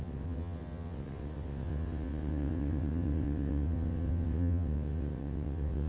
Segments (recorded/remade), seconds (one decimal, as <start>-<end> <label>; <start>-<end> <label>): 0.0-5.9 remade